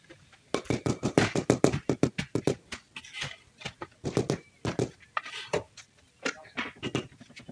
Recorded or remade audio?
recorded